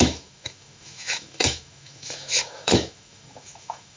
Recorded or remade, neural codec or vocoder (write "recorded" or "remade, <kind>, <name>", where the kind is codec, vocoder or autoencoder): remade, autoencoder, DAC-VAE